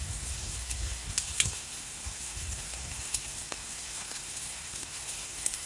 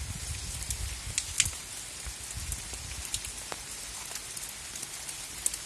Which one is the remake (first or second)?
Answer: first